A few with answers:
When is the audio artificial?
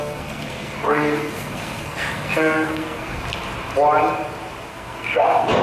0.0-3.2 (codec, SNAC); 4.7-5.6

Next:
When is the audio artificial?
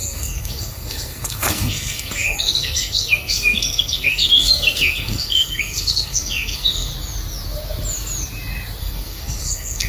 0.0-6.9 (codec, SNAC); 8.8-9.9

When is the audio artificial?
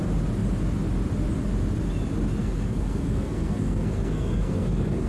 2.4-5.1 (codec, SNAC)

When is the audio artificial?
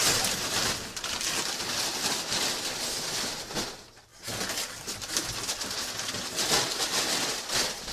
none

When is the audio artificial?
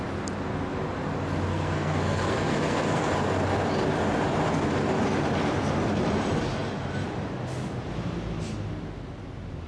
1.5-3.1 (codec, SNAC)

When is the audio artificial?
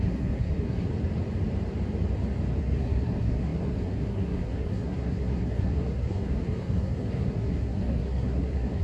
0.0-0.9 (codec, SNAC); 2.6-8.8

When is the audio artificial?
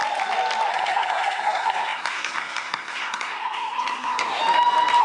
0.7-4.4 (codec, SNAC)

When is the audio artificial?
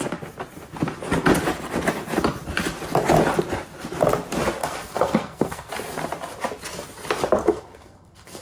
4.6-5.7 (codec, SNAC); 7.4-8.4